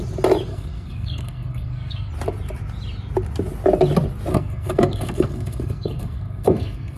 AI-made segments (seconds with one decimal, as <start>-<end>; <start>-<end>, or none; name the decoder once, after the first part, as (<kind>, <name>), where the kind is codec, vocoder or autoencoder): 0.5-2.1 (codec, SNAC); 4.3-7.0